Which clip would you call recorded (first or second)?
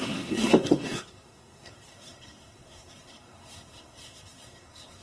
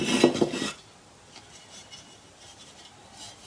second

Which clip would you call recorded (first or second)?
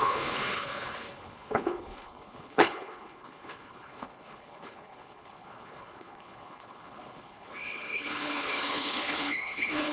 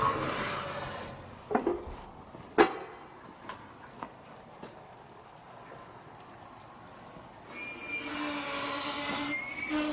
second